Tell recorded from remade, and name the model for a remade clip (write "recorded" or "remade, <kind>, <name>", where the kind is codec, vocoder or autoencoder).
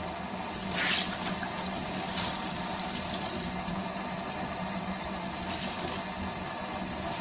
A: recorded